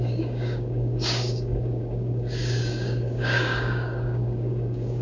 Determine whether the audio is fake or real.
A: fake